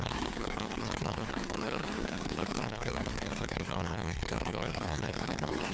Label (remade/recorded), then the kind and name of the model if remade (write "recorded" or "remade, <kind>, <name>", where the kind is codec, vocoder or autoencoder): remade, codec, SNAC